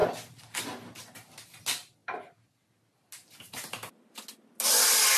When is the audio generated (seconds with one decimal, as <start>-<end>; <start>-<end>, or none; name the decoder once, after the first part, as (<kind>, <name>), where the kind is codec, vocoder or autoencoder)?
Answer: none